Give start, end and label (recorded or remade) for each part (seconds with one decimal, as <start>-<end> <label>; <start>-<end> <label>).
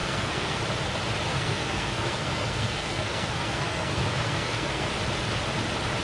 0.0-0.6 remade; 0.6-1.3 recorded; 1.3-4.9 remade; 4.9-6.0 recorded